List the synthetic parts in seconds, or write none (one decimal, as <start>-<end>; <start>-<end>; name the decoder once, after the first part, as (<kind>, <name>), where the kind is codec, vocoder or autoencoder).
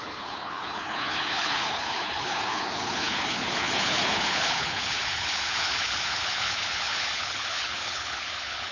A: 0.0-8.7 (codec, HILCodec)